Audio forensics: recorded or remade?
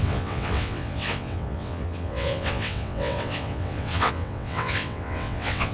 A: remade